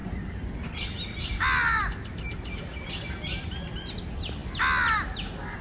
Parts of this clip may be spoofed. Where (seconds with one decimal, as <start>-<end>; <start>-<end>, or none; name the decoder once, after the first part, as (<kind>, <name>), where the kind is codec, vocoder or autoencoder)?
none